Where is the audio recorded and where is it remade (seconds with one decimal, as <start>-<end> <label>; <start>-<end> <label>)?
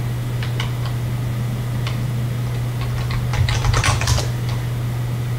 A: 0.0-3.3 recorded; 3.3-4.2 remade; 4.2-5.4 recorded